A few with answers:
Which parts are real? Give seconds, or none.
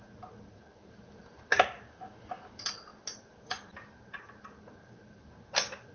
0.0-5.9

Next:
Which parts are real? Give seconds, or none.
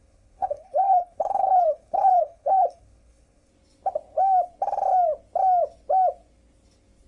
3.5-7.1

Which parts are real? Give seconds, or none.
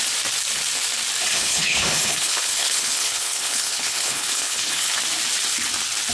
0.0-1.3; 5.0-6.1